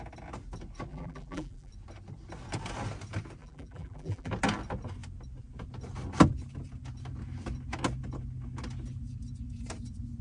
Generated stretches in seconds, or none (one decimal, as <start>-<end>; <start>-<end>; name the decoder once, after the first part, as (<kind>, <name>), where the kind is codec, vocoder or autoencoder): 0.9-1.7 (vocoder, BigVGAN v2); 3.4-4.3